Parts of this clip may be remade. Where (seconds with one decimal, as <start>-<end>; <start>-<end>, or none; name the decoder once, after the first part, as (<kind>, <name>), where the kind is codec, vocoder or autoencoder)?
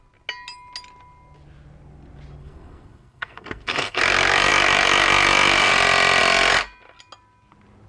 2.4-4.0 (codec, SNAC)